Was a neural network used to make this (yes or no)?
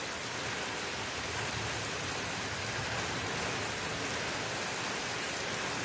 yes